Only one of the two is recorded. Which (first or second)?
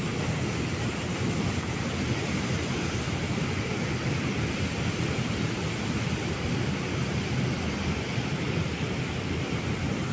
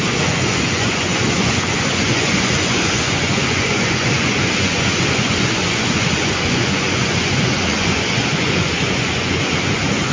first